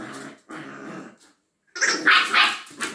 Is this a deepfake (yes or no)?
no